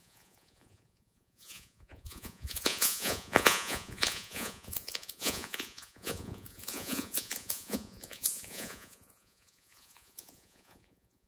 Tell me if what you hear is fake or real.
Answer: fake